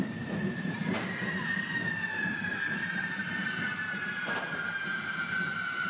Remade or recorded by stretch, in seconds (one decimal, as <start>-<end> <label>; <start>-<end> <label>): 0.0-5.9 remade